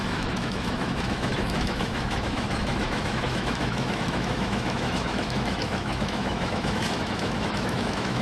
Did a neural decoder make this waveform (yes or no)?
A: yes